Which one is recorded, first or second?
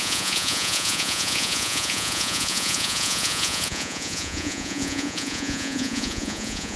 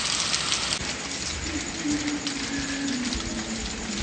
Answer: second